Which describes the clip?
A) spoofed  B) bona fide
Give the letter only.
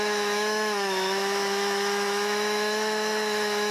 A